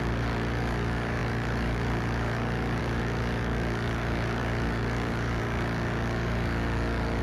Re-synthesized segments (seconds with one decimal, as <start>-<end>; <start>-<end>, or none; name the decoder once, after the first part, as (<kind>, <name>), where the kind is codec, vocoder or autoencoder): 0.0-7.2 (codec, DAC)